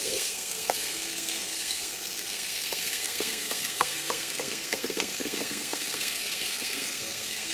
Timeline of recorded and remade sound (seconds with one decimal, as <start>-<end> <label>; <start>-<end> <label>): 0.0-7.5 remade